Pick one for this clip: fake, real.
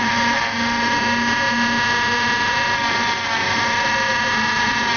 real